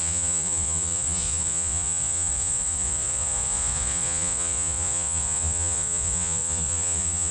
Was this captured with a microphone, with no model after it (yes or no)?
no